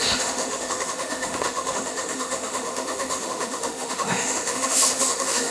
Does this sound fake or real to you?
fake